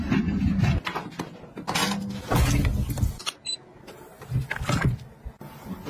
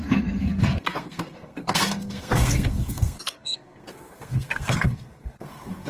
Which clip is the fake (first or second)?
second